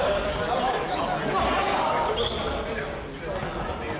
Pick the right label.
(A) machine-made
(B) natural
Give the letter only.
B